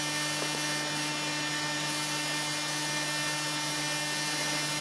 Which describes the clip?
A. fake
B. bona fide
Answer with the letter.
B